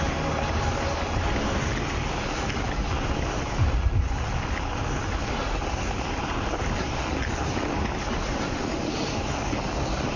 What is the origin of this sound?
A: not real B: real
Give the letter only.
B